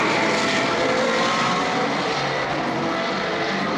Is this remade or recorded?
remade